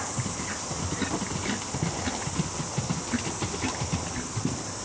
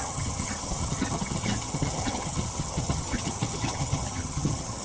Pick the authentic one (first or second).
first